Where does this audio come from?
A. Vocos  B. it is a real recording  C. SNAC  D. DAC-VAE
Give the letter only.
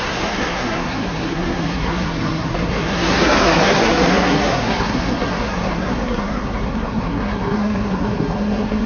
C